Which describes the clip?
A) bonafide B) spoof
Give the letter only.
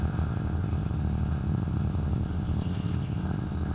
B